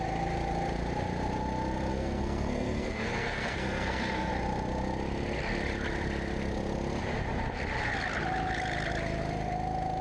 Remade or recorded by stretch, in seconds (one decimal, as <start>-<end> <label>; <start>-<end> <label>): 0.0-1.9 recorded; 1.9-4.3 remade; 4.3-10.0 recorded

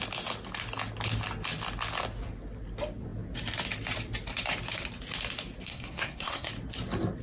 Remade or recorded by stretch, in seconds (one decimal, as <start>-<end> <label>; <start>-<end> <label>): 0.0-5.7 recorded; 5.7-6.5 remade; 6.5-7.2 recorded

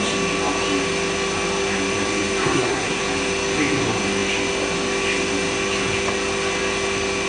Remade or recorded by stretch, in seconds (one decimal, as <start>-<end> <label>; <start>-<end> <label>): 0.0-2.4 recorded; 2.4-3.0 remade; 3.0-7.3 recorded

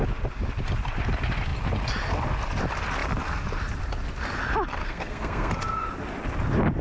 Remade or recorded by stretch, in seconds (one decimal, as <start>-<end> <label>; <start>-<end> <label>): 0.0-4.8 recorded; 4.8-5.5 remade; 5.5-6.8 recorded

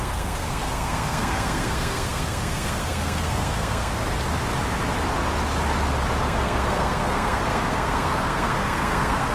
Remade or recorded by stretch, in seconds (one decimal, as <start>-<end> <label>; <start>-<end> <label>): 0.0-4.0 remade; 4.0-6.2 recorded; 6.2-9.3 remade